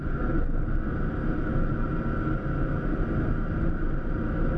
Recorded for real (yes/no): yes